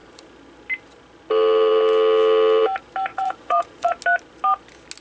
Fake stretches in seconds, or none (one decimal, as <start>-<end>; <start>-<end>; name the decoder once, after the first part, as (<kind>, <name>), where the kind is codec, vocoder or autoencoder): 3.1-3.9 (vocoder, Vocos)